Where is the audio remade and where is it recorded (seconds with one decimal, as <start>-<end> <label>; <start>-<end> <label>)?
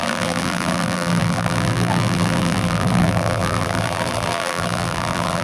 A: 0.0-5.4 remade